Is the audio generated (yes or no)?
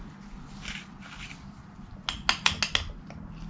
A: no